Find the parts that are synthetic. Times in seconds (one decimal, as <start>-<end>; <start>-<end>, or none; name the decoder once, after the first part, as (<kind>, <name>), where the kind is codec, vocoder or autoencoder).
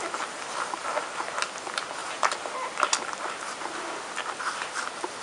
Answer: none